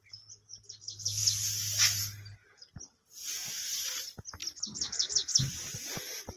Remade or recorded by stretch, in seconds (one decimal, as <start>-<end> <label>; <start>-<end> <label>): 0.0-6.4 recorded